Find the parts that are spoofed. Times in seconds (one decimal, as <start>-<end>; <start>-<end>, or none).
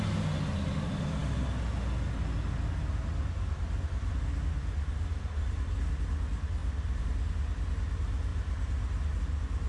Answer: 6.6-7.3